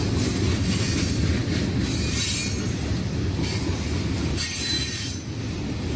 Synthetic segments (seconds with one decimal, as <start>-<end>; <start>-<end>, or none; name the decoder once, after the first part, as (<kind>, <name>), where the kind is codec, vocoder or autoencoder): none